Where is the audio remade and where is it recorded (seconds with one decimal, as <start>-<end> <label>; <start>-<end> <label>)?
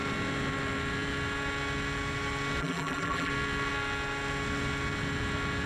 0.0-2.6 recorded; 2.6-3.3 remade; 3.3-5.7 recorded